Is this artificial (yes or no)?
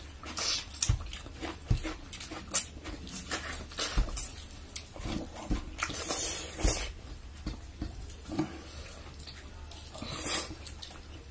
no